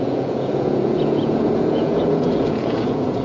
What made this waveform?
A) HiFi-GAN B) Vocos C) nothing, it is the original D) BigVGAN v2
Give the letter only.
B